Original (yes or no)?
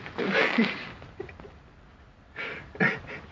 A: yes